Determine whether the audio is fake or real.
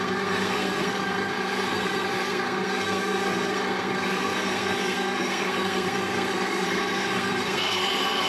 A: fake